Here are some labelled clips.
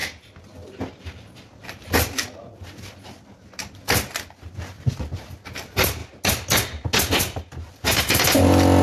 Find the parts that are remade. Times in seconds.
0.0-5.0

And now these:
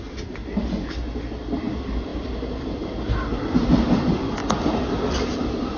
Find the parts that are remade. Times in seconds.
none

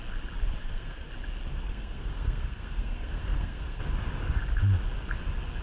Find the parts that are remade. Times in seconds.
0.6-1.1; 1.5-3.8

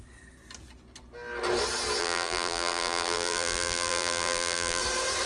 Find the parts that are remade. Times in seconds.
2.0-4.8

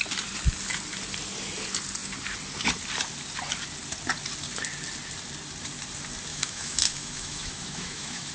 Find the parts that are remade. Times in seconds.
6.3-8.3